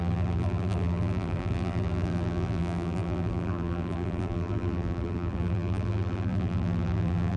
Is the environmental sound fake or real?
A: fake